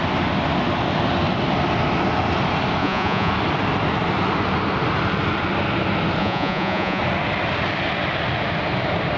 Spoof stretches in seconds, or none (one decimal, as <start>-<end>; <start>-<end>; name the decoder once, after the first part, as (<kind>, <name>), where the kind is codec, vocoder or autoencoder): 2.8-3.3 (vocoder, Vocos); 6.2-7.0